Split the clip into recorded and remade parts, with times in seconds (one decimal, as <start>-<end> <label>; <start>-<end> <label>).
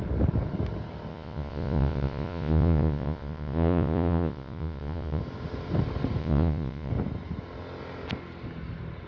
0.0-1.1 recorded; 1.1-5.2 remade; 5.2-6.2 recorded; 6.2-6.9 remade; 6.9-9.1 recorded